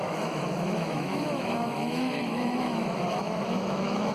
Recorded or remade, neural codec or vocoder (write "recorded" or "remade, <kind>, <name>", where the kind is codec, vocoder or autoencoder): remade, autoencoder, DAC-VAE